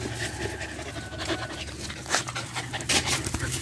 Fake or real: real